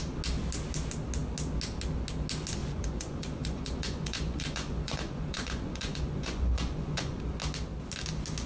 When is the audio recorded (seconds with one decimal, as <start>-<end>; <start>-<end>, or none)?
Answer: 0.0-2.6; 7.2-8.5